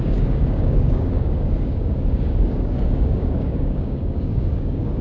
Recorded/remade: remade